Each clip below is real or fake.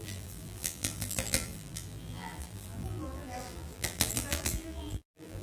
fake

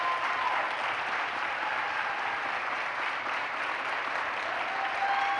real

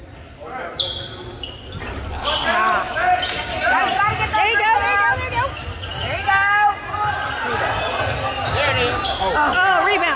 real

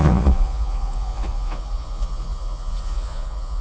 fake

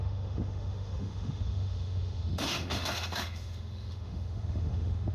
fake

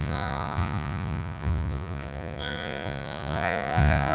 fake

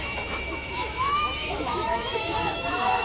fake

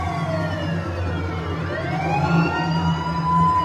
real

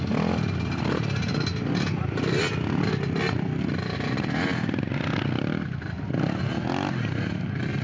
real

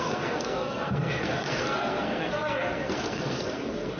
fake